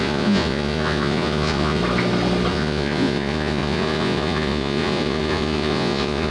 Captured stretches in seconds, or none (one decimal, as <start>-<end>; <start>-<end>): 1.8-2.5